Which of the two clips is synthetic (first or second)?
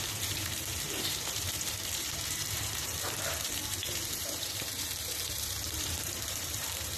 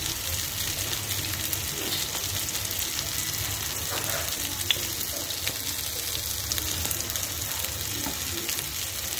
first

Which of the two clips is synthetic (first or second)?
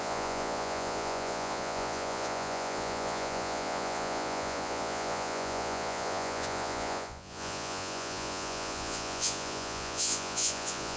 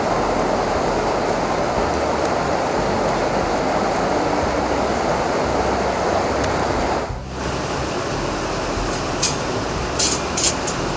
first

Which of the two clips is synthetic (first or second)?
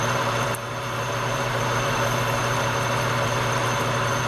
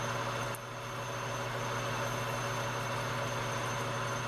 first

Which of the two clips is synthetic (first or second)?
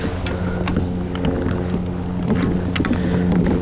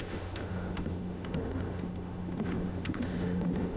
second